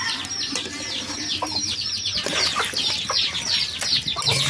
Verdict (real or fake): real